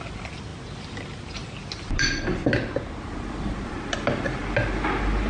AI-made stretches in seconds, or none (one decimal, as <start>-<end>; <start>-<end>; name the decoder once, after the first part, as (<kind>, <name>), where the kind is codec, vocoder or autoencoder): none

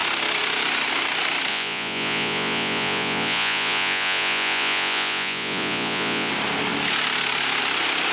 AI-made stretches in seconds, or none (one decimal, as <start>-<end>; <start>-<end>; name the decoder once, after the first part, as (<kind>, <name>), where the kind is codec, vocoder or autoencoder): 1.5-6.3 (vocoder, Vocos)

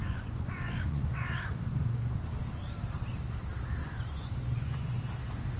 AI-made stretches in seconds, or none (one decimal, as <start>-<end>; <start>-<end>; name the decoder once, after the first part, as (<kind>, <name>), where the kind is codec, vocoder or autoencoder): 0.0-2.4 (vocoder, Vocos); 3.8-5.0

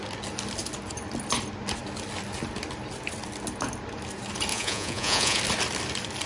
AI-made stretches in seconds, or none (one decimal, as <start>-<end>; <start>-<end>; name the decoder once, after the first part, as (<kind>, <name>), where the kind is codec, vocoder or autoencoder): 4.5-5.4 (vocoder, Vocos)

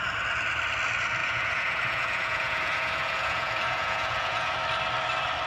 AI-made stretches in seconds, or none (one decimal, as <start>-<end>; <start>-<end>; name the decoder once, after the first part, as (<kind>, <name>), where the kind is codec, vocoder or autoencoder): 1.2-4.5 (vocoder, Vocos)

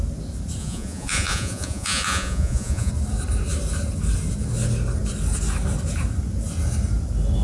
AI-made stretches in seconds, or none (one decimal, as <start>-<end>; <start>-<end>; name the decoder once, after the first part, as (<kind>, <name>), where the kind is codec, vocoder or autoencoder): 0.6-2.9 (vocoder, Vocos)

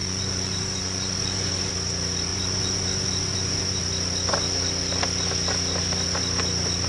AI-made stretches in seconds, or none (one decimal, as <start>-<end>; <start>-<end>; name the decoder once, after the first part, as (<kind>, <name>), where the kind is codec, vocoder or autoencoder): 0.0-1.7 (vocoder, Vocos); 2.3-3.8

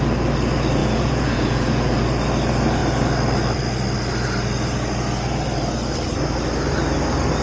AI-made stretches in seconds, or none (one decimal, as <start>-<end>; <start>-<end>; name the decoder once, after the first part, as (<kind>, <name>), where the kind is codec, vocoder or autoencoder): 0.8-1.9 (vocoder, Vocos)